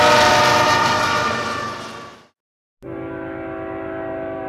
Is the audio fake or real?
real